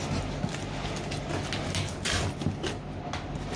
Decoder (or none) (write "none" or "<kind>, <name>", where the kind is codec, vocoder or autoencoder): none